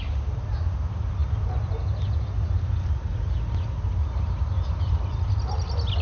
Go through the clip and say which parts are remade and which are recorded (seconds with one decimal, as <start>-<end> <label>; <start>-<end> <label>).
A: 0.0-6.0 recorded